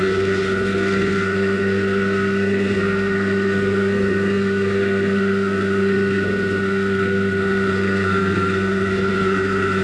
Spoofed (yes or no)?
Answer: yes